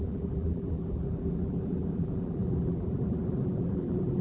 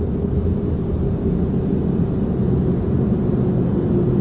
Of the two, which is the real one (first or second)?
second